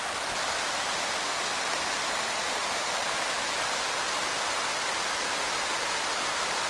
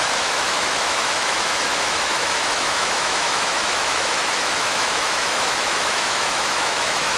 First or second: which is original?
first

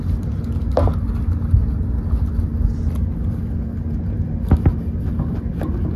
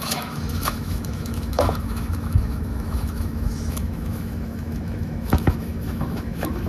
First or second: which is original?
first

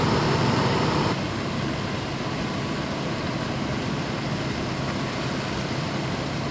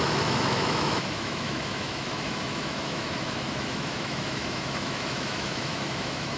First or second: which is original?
first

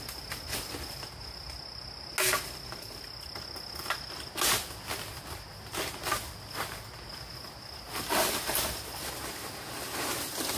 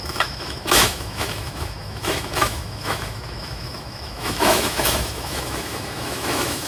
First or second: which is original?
first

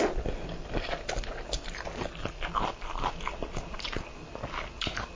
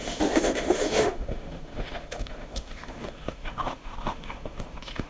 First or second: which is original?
first